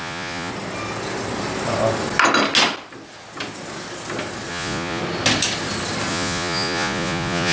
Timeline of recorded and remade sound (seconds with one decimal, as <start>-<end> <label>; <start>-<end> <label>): 0.0-0.5 remade; 0.5-4.5 recorded; 4.5-5.0 remade; 5.0-6.1 recorded; 6.1-7.5 remade